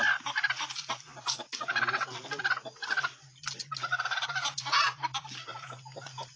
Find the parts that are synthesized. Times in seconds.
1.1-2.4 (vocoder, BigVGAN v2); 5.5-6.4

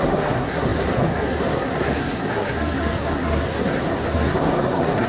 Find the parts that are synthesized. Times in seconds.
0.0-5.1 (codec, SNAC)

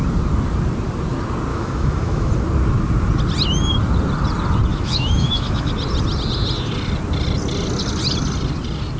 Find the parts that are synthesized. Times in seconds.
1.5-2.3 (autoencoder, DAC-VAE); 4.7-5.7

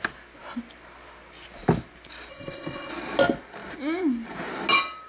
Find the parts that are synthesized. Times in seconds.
2.3-2.9 (codec, SNAC)